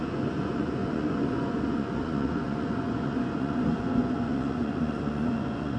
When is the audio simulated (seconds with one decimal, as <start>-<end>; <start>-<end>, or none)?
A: 0.0-5.8